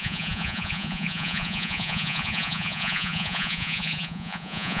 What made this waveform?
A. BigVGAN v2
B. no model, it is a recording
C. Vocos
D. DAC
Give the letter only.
C